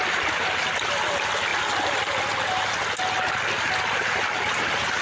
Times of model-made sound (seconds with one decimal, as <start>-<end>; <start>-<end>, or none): none